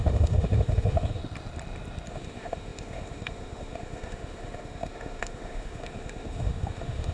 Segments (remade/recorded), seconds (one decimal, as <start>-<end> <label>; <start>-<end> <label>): 0.0-1.2 remade; 1.2-2.1 recorded; 2.1-7.1 remade